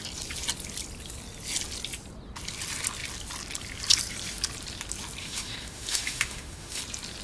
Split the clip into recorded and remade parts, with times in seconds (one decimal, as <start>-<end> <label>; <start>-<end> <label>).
0.0-5.2 recorded; 5.2-6.8 remade; 6.8-7.2 recorded